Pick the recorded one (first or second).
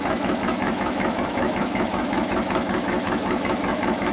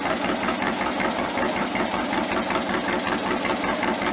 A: second